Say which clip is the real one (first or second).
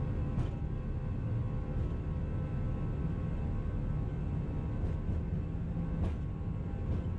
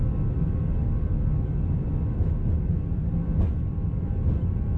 first